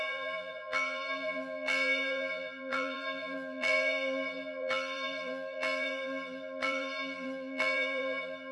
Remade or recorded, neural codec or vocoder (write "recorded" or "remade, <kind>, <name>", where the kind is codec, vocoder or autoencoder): remade, vocoder, BigVGAN v2